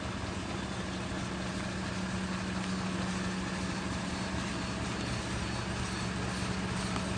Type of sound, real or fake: real